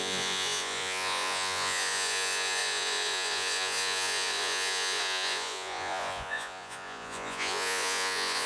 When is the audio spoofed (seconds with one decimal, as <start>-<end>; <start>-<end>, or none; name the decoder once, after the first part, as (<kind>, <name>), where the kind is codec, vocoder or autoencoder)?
0.0-8.5 (vocoder, Vocos)